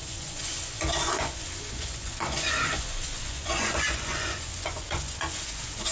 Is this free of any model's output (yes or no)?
no